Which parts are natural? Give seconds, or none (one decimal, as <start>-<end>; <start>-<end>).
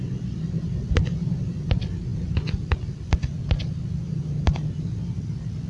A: 0.0-4.0; 4.5-5.7